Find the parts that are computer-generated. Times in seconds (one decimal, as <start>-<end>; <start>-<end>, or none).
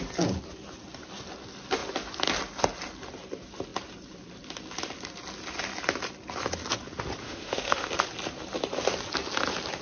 7.2-7.9